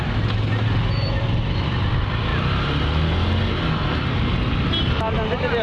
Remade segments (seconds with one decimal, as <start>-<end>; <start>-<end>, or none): none